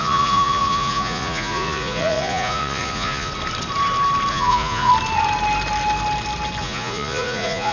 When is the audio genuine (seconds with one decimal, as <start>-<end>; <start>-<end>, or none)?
3.3-4.3; 4.9-6.6